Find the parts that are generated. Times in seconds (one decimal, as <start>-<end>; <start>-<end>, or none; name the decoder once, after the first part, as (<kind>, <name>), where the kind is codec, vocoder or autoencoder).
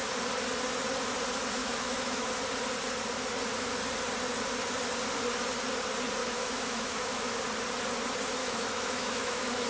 1.6-2.3 (autoencoder, DAC-VAE); 6.2-7.4; 8.4-9.7